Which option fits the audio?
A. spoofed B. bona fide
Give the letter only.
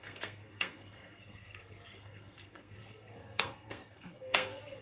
A